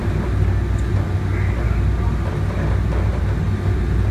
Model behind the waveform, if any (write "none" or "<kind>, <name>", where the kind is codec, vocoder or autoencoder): none